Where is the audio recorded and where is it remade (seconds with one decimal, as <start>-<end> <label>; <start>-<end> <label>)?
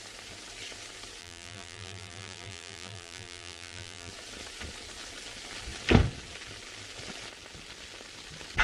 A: 0.0-1.2 recorded; 1.2-4.1 remade; 4.1-8.6 recorded